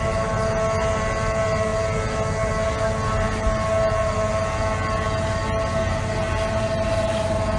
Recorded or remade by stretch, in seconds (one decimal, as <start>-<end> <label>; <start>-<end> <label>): 0.0-7.6 recorded